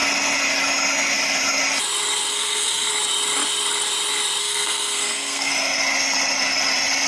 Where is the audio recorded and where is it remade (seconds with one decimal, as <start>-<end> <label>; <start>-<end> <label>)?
0.0-2.3 recorded; 2.3-2.9 remade; 2.9-4.4 recorded; 4.4-5.5 remade; 5.5-7.1 recorded